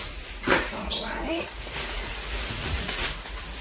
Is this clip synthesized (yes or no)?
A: yes